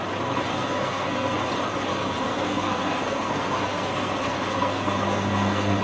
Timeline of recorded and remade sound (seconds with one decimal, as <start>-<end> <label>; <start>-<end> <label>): 0.0-0.5 recorded; 0.5-1.5 remade; 1.5-1.9 recorded; 1.9-5.8 remade